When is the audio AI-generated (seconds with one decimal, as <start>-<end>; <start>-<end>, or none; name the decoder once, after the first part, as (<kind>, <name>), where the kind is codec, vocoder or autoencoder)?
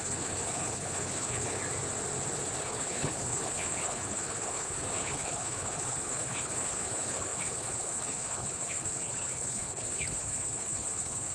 0.0-1.6 (codec, HILCodec); 2.6-11.3